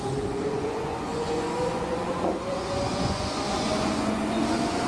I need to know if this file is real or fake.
fake